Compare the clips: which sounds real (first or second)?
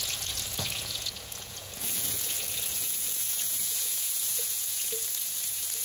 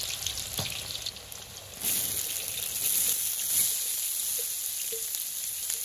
second